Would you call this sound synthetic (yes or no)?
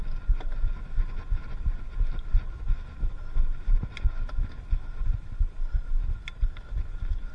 no